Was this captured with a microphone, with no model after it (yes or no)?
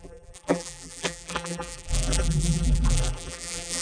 no